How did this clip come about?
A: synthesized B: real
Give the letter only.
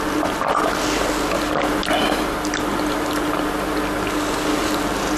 B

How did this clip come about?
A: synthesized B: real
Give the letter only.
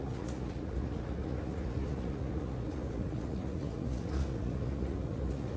A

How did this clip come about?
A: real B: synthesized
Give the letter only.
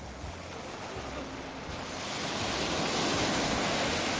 A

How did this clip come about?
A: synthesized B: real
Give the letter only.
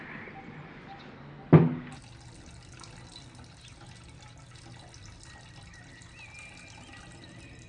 B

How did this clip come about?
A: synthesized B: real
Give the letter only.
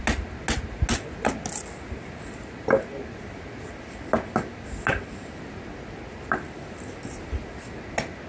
B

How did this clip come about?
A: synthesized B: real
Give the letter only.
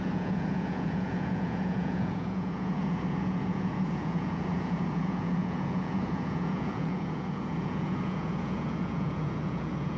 A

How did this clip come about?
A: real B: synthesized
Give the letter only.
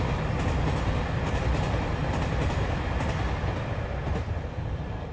A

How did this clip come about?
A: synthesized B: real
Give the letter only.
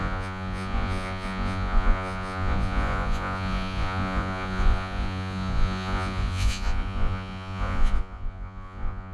A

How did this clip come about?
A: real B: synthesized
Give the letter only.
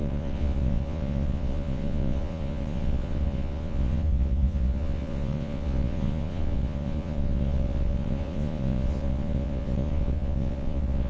B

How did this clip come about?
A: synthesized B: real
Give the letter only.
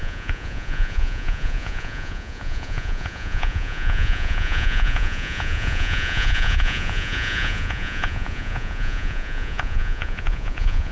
A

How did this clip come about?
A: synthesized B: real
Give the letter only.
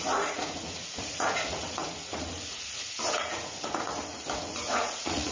A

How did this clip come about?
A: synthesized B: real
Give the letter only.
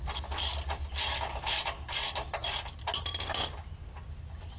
B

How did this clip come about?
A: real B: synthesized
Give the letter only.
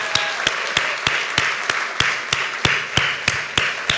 A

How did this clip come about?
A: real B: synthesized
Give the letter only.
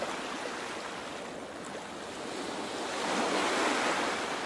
A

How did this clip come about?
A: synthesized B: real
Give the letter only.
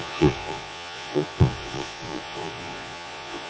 A